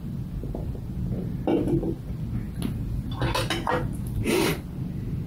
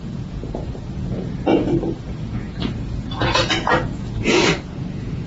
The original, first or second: first